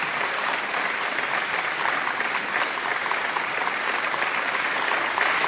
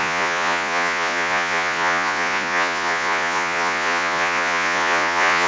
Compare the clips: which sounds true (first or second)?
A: first